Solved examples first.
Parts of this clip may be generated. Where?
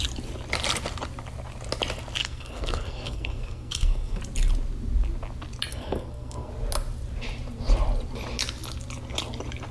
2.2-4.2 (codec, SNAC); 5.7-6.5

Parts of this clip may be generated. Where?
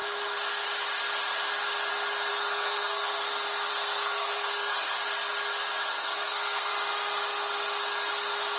2.3-3.3 (codec, SNAC); 3.7-4.9; 6.0-6.7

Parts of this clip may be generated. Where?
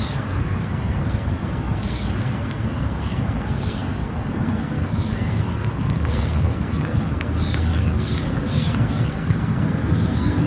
0.0-10.5 (codec, SNAC)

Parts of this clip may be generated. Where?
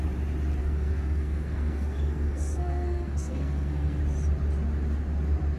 0.6-4.0 (codec, SNAC)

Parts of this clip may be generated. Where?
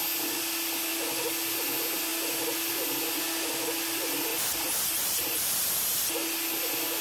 none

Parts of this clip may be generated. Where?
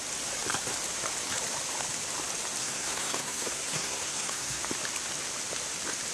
2.6-4.6 (codec, SNAC)